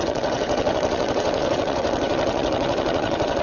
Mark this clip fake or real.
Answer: fake